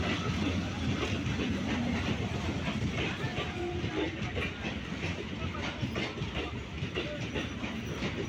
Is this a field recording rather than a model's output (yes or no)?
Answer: yes